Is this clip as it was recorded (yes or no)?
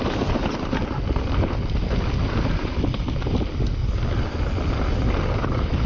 yes